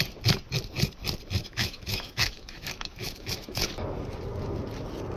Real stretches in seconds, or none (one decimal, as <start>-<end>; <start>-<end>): 0.0-1.4; 3.7-5.2